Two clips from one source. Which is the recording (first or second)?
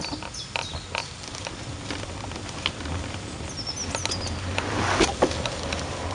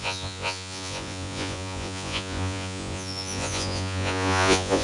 first